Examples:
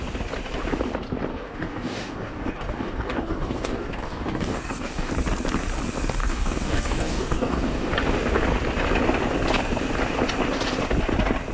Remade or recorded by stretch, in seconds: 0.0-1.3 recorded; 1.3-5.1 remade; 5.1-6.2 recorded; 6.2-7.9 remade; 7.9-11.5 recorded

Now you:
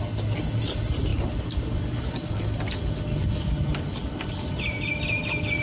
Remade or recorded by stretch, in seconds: 0.0-5.6 recorded

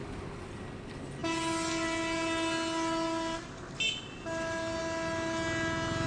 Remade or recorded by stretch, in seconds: 0.0-6.1 recorded

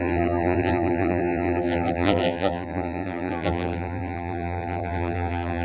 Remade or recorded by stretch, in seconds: 0.0-5.6 remade